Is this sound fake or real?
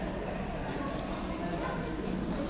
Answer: real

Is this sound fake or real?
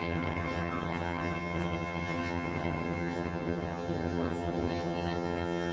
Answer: fake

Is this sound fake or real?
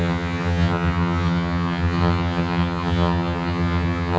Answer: fake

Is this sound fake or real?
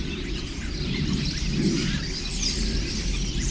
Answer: real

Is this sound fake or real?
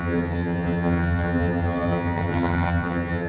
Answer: fake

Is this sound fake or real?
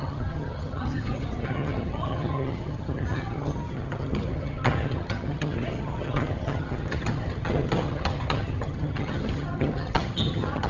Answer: fake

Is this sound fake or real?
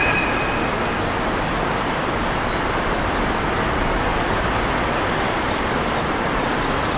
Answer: real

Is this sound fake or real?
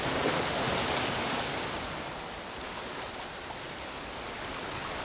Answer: real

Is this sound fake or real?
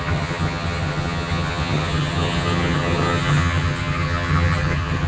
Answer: fake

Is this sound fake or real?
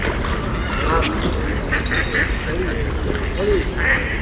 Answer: real